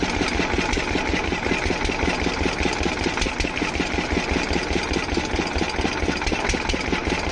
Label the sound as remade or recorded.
recorded